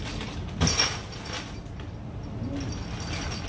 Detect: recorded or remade recorded